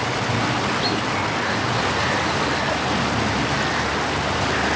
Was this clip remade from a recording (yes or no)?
no